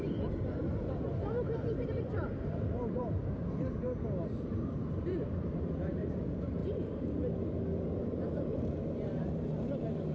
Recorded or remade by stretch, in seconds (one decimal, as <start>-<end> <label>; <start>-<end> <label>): 0.0-6.6 remade; 6.6-8.0 recorded; 8.0-10.1 remade